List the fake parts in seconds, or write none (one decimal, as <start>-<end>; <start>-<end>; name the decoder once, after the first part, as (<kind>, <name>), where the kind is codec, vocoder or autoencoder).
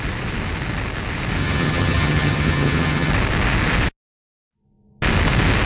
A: 1.4-3.1 (vocoder, HiFi-GAN)